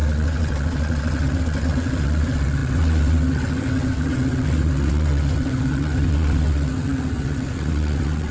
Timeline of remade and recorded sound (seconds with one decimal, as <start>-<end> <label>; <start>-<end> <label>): 0.0-8.3 remade